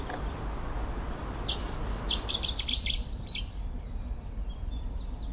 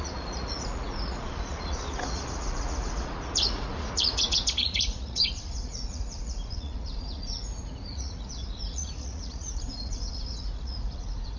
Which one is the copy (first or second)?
second